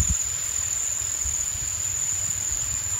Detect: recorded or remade recorded